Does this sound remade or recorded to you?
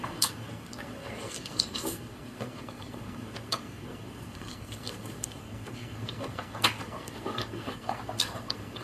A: remade